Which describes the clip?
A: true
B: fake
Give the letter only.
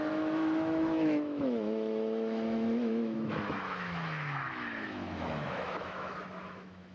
B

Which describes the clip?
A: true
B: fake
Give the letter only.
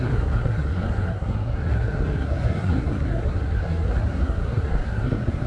B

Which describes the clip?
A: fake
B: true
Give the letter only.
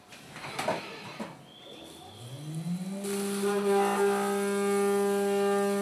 B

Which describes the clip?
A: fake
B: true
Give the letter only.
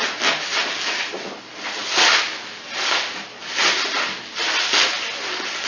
B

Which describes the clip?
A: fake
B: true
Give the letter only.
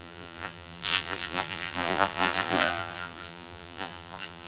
A